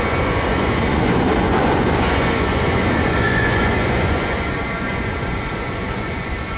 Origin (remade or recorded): remade